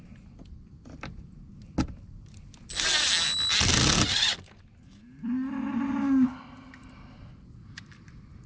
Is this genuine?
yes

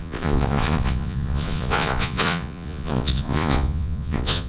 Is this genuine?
no